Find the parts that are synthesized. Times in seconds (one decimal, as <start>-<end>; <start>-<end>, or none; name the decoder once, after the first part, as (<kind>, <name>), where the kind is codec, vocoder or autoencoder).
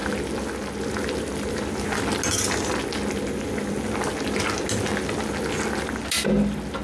none